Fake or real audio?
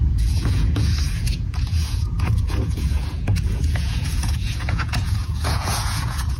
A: fake